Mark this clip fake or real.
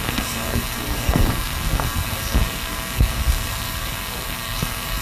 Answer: fake